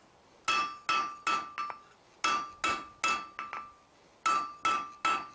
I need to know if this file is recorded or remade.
recorded